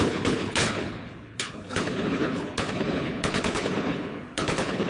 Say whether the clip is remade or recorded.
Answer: remade